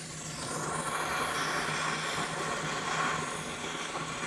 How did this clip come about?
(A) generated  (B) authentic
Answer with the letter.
B